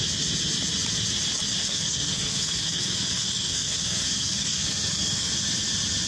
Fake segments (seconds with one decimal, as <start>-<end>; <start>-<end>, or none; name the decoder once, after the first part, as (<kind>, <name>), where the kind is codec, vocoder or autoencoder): 1.6-5.3 (codec, SNAC)